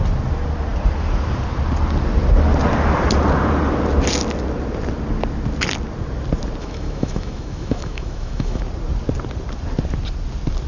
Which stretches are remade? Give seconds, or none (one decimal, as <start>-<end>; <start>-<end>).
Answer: 6.6-8.6

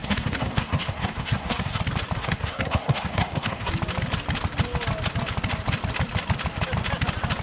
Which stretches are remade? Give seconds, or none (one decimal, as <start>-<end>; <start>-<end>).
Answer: 0.0-1.8; 2.2-3.7

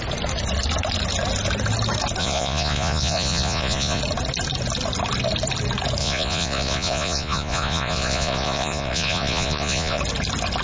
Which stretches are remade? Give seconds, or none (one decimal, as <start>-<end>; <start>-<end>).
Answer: 2.2-4.0; 6.0-10.0